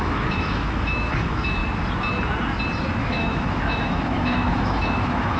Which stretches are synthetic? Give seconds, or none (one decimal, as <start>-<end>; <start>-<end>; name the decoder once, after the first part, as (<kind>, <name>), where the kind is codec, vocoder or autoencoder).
0.0-1.6 (autoencoder, DAC-VAE); 3.0-5.4